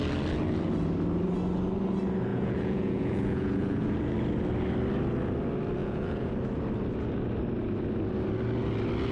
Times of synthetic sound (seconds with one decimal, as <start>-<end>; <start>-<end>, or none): 2.3-3.9; 5.8-6.3